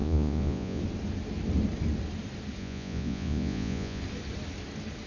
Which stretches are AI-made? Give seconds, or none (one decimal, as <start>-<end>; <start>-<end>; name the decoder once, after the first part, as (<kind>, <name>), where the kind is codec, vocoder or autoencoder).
0.0-0.8 (vocoder, Vocos); 2.6-4.0